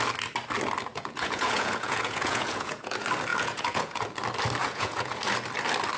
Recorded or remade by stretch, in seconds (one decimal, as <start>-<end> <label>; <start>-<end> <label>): 0.0-0.9 recorded; 0.9-2.9 remade; 2.9-3.3 recorded; 3.3-4.0 remade; 4.0-4.6 recorded; 4.6-5.2 remade; 5.2-6.0 recorded

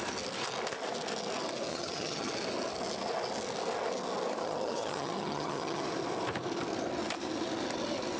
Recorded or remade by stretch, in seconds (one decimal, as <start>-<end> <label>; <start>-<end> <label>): 0.0-1.7 recorded; 1.7-2.3 remade; 2.3-4.4 recorded; 4.4-5.8 remade; 5.8-8.2 recorded